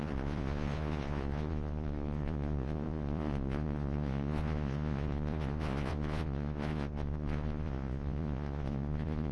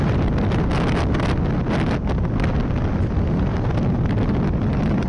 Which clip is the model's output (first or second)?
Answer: first